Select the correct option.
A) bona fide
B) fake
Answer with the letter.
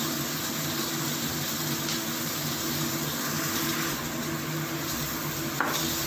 A